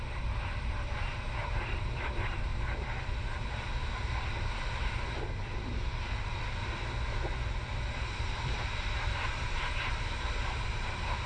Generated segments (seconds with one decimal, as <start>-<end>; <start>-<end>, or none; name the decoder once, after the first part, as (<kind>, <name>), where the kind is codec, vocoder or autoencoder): 0.0-2.5 (vocoder, BigVGAN v2); 5.5-6.3; 7.7-11.3